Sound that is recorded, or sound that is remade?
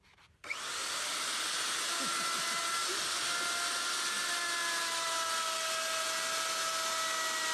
recorded